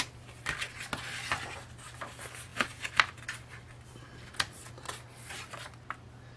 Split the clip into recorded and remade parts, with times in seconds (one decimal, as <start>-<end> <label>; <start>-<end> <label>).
0.0-6.4 recorded